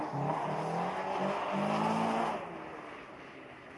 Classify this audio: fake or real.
real